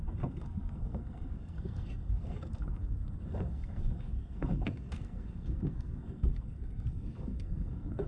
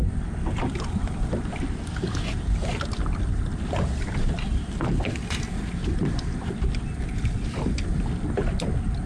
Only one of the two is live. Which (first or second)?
second